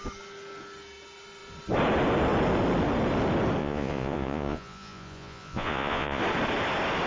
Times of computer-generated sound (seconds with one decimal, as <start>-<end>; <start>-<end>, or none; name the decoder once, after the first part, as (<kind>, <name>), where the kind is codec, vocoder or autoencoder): 3.6-6.2 (vocoder, Vocos)